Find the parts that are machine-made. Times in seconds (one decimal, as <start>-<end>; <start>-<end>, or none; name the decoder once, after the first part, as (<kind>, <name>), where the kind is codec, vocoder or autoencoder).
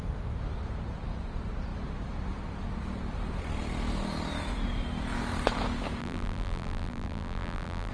6.0-7.9 (vocoder, BigVGAN v2)